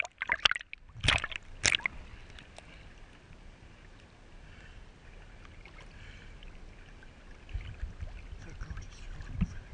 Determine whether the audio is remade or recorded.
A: recorded